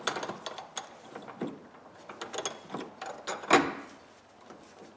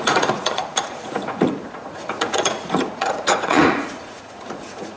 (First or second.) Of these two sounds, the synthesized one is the second